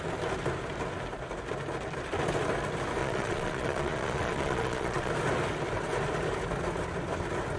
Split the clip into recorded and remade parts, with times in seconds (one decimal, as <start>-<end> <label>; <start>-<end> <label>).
0.0-3.0 recorded; 3.0-5.1 remade; 5.1-7.6 recorded